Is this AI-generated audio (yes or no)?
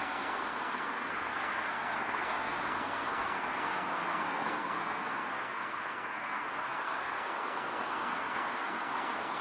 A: yes